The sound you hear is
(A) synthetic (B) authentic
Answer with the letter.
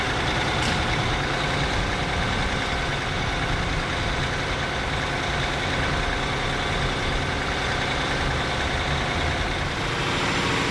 B